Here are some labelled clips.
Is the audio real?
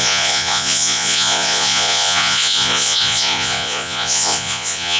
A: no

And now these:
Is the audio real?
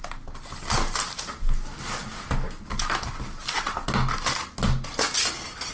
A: yes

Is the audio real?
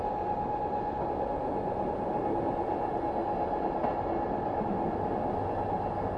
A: yes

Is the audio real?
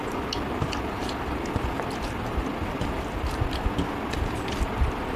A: yes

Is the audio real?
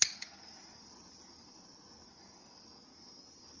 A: yes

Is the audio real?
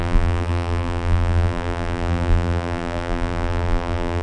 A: no